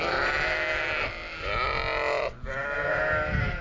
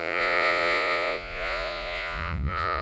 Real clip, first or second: first